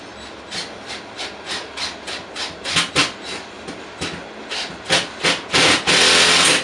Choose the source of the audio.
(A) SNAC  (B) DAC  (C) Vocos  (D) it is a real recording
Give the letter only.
D